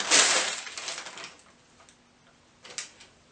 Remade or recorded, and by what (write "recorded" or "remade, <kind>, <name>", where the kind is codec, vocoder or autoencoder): recorded